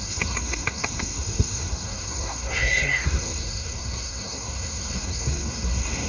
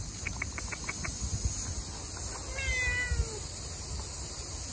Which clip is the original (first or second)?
second